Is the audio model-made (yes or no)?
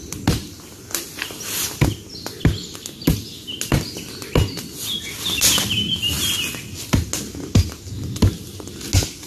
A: no